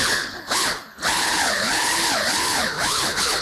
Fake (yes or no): yes